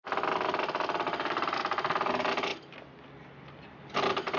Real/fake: real